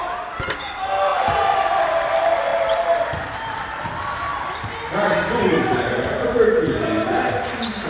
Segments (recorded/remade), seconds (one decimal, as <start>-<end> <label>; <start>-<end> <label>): 0.0-1.1 recorded; 1.1-1.8 remade; 1.8-2.5 recorded; 2.5-3.0 remade; 3.0-7.9 recorded